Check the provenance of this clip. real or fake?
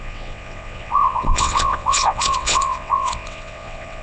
fake